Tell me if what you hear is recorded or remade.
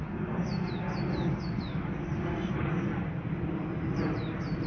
recorded